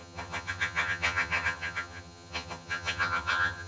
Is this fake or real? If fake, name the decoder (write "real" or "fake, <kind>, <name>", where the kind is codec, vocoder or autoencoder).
fake, vocoder, HiFi-GAN